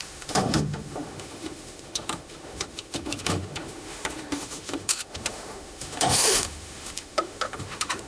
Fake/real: fake